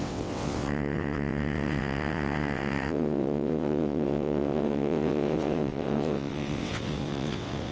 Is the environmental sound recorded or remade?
remade